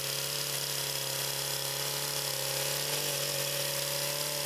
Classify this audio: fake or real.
real